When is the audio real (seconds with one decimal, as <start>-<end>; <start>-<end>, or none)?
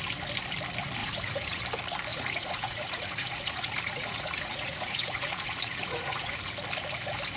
0.0-1.0; 1.6-2.1; 6.5-7.4